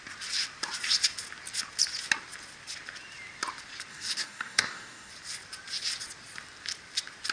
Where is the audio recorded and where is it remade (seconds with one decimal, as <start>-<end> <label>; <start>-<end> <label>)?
0.0-3.9 recorded; 3.9-5.1 remade; 5.1-7.3 recorded